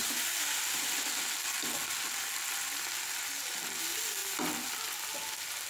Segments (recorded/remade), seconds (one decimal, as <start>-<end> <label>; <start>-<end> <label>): 0.0-5.7 recorded

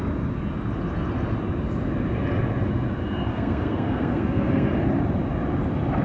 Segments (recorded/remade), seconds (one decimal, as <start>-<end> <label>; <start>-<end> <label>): 0.0-3.3 recorded; 3.3-4.7 remade; 4.7-6.0 recorded